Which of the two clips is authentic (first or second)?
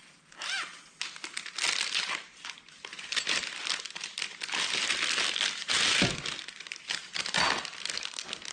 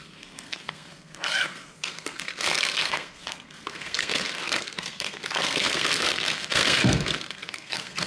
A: first